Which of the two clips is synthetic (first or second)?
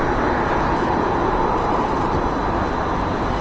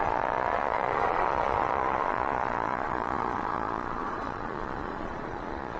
second